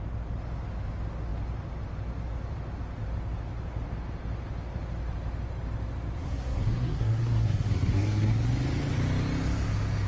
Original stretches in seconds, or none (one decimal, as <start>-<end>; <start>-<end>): 0.0-6.2; 8.3-10.1